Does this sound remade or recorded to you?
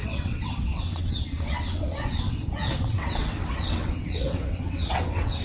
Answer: remade